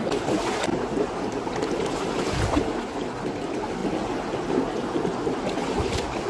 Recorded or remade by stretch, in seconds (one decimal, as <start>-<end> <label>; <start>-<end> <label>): 0.0-6.3 recorded